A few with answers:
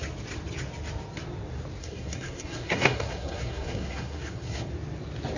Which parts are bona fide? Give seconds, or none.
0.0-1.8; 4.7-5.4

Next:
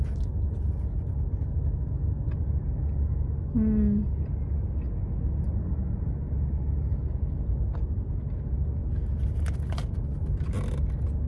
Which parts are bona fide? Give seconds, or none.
0.0-11.3

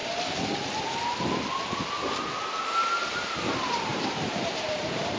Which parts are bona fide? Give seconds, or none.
0.0-3.1